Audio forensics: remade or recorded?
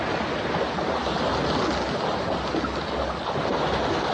recorded